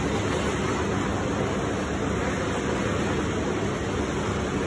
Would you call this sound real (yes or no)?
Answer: yes